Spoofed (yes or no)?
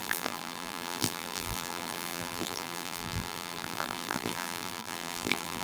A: yes